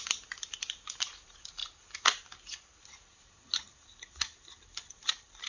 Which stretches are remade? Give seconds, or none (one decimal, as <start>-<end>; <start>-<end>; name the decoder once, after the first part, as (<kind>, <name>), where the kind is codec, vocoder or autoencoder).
0.0-1.6 (vocoder, BigVGAN v2); 4.9-5.5